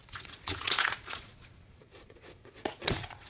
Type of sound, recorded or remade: remade